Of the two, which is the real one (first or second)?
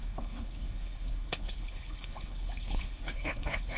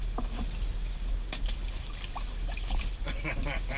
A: second